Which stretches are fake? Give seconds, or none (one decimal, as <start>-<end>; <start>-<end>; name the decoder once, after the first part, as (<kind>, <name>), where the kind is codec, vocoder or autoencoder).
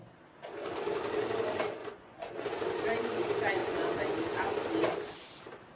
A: 1.8-2.5 (vocoder, Vocos); 3.6-4.5